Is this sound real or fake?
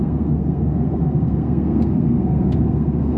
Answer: fake